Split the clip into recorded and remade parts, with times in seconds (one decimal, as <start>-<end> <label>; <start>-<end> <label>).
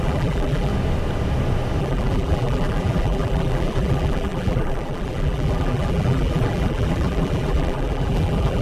0.0-0.7 remade; 0.7-1.8 recorded; 1.8-8.6 remade